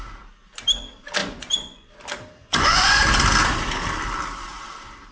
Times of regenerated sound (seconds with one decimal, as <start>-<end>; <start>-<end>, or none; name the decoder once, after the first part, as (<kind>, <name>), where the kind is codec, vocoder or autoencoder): 1.2-1.9 (vocoder, Vocos); 2.4-3.0